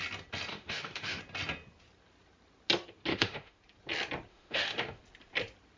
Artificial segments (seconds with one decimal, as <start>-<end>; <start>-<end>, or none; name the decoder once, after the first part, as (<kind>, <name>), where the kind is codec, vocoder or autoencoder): 0.5-1.2 (autoencoder, DAC-VAE); 3.1-3.6; 4.3-5.0